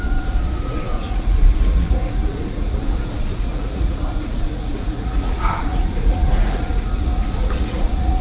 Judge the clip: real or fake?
fake